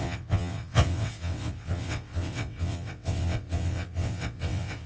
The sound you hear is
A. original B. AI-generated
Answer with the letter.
B